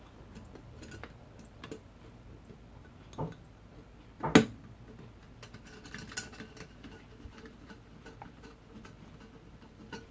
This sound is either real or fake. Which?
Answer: real